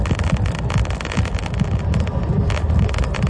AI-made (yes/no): no